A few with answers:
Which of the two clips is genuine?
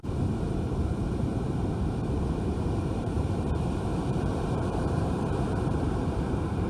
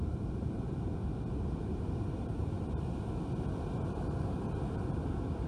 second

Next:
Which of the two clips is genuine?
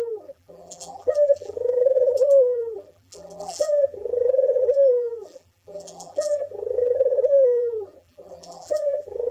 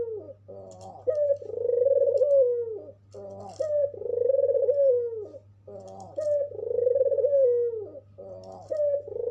second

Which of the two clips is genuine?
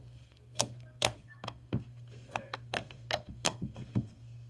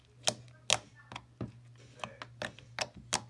second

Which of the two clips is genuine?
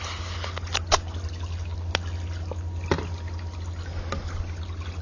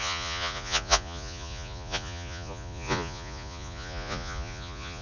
first